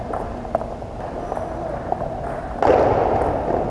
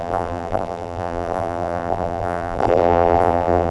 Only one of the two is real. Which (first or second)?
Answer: first